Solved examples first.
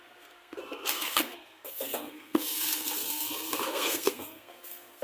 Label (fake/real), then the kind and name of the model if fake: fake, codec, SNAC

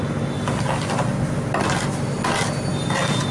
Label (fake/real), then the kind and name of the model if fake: real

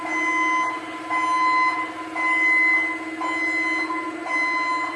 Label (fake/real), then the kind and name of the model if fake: real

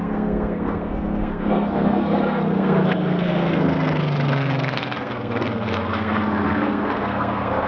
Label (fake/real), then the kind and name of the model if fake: fake, codec, SNAC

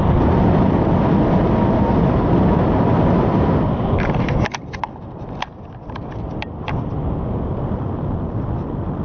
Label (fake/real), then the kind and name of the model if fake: real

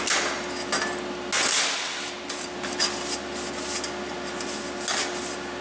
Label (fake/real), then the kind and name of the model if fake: real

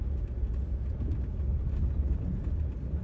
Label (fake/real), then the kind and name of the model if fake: real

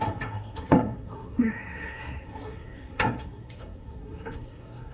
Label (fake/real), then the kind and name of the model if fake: fake, codec, SNAC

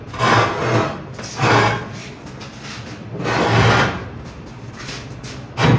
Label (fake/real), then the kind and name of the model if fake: real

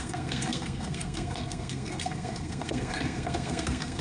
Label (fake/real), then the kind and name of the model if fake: fake, codec, SNAC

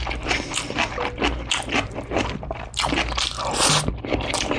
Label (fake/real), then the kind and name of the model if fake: real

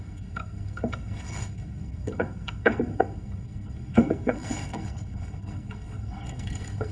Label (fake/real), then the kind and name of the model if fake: fake, codec, SNAC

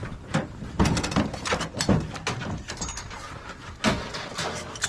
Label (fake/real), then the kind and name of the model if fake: real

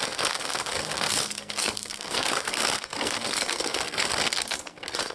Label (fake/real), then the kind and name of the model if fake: fake, codec, SNAC